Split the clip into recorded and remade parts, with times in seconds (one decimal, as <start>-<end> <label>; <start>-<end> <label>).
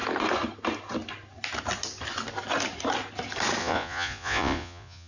0.0-3.6 recorded; 3.6-5.1 remade